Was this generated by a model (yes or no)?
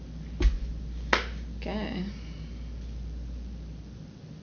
no